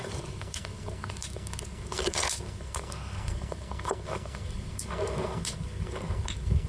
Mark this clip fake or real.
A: fake